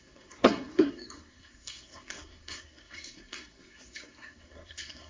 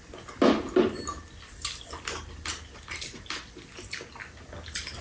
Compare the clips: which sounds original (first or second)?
second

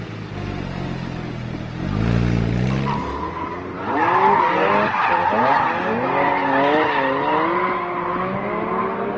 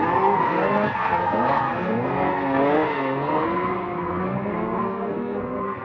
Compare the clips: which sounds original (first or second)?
first